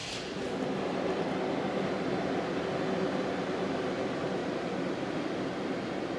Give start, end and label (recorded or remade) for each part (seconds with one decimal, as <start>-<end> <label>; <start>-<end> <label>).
0.0-6.2 recorded